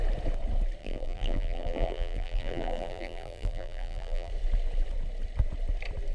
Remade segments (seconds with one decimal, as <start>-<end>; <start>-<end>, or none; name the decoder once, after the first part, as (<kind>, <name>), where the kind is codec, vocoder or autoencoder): 0.8-4.3 (vocoder, BigVGAN v2)

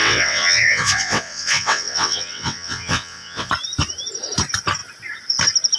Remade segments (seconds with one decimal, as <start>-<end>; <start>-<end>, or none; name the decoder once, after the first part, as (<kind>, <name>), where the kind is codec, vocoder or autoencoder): 0.0-3.5 (vocoder, WaveNeXt)

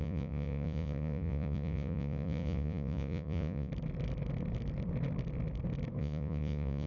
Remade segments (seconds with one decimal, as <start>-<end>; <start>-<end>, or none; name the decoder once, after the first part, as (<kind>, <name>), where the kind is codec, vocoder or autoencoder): 0.0-3.7 (vocoder, Vocos); 6.0-6.9

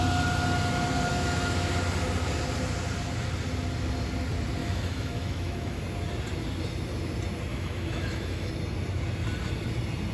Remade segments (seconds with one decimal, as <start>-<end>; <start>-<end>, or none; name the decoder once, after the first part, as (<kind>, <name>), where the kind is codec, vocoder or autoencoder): 1.1-1.7 (autoencoder, DAC-VAE); 4.6-5.8; 7.5-8.5

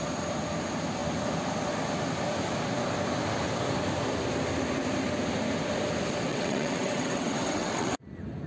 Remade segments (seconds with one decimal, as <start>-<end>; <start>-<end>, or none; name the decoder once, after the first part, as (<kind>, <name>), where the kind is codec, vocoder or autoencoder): 6.3-8.0 (vocoder, WaveNeXt)

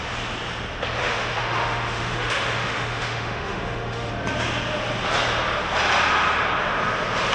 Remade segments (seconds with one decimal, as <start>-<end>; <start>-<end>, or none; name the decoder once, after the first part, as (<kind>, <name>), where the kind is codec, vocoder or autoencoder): 1.0-4.1 (autoencoder, DAC-VAE)

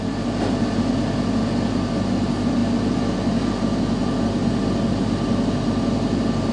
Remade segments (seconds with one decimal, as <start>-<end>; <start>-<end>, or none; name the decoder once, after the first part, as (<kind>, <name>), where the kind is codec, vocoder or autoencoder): none